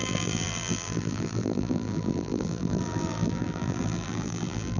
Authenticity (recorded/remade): remade